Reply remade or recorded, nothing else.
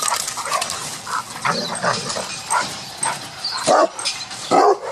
recorded